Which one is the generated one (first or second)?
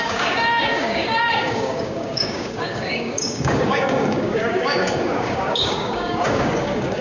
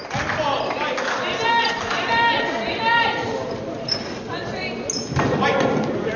first